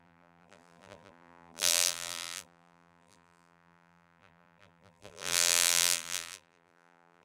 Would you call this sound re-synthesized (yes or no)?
yes